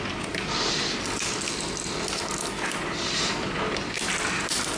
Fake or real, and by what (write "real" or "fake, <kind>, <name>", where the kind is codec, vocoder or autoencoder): real